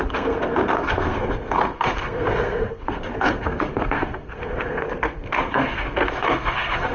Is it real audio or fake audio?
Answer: fake